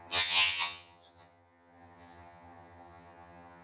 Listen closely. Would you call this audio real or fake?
fake